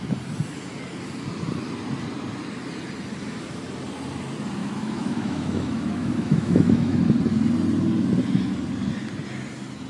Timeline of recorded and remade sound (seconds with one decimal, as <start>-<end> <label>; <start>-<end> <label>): 0.0-4.6 recorded; 4.6-7.0 remade; 7.0-9.9 recorded